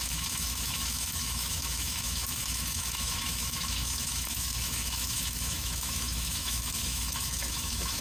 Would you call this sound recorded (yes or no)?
no